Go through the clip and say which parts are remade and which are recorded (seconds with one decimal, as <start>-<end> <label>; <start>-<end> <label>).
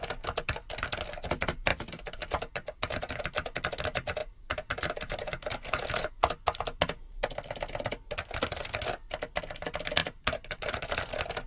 0.0-1.7 recorded; 1.7-3.2 remade; 3.2-4.2 recorded; 4.2-6.1 remade; 6.1-10.0 recorded; 10.0-10.9 remade; 10.9-11.5 recorded